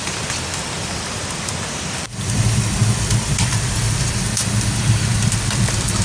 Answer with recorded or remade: remade